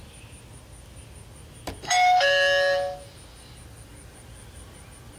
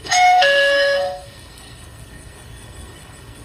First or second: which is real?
first